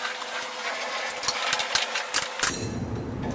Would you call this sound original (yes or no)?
yes